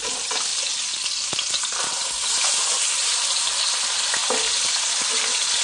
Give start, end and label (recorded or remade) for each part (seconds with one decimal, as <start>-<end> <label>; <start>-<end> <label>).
0.0-5.6 recorded